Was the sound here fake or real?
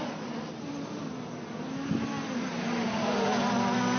real